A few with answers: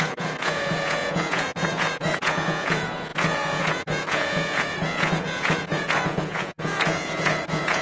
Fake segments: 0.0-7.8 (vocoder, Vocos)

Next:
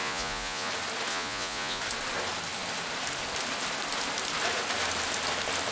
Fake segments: 0.0-0.7 (vocoder, Vocos); 1.1-1.8

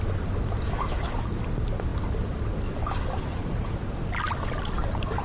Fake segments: 3.3-4.1 (vocoder, Vocos)

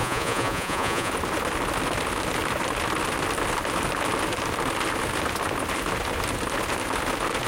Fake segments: 0.0-1.1 (vocoder, Vocos)

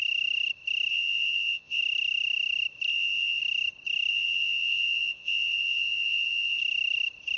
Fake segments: 0.9-1.8 (vocoder, Vocos); 2.9-3.4; 4.1-6.6

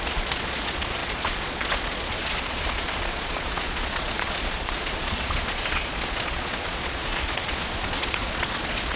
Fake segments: 0.0-9.0 (vocoder, Vocos)

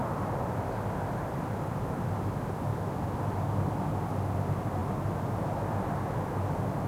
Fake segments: none